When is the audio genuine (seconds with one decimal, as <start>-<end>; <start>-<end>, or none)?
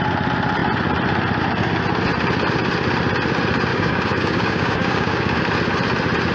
0.0-3.7; 5.4-6.3